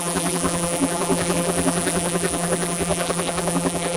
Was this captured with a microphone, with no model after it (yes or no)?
no